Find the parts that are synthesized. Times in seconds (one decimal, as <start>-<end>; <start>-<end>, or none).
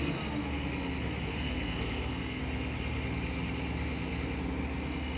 1.3-2.4